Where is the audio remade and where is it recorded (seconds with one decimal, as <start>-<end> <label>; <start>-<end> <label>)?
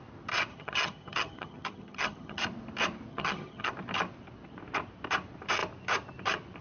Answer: 0.0-0.5 recorded; 0.5-2.4 remade; 2.4-3.1 recorded; 3.1-3.7 remade; 3.7-6.6 recorded